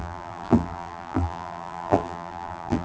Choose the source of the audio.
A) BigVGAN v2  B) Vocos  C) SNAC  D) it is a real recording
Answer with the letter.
A